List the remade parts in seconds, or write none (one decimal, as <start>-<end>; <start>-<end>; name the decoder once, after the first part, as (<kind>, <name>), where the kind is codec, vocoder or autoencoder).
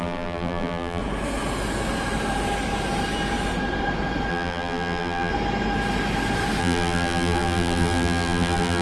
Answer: 0.0-1.0 (vocoder, BigVGAN v2); 4.3-5.3; 6.6-8.8